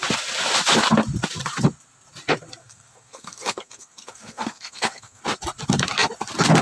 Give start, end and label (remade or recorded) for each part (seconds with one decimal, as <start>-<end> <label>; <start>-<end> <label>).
0.0-2.6 recorded; 2.6-5.2 remade; 5.2-6.6 recorded